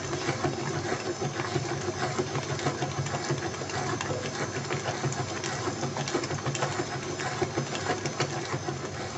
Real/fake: real